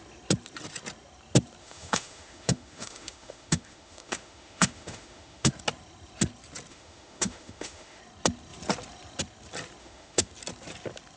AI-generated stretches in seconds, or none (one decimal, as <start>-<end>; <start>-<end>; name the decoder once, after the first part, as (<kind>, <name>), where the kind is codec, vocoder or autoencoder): 1.6-5.5 (autoencoder, DAC-VAE); 6.7-8.0; 9.8-10.3